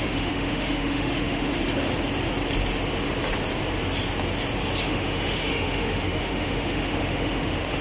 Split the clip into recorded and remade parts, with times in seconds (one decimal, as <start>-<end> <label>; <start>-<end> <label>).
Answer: 0.0-1.5 remade; 1.5-4.8 recorded; 4.8-7.8 remade